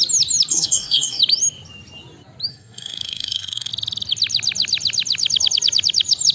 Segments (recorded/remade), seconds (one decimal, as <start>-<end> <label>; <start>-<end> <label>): 0.0-0.5 recorded; 0.5-1.2 remade; 1.2-2.5 recorded; 2.5-3.7 remade; 3.7-6.3 recorded